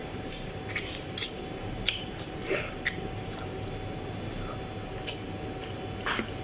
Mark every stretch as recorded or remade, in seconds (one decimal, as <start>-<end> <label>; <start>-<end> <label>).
0.0-3.5 remade; 3.5-6.4 recorded